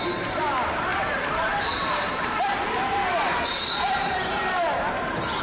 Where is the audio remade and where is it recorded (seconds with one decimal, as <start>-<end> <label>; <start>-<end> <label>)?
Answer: 0.0-0.9 recorded; 0.9-4.1 remade; 4.1-5.4 recorded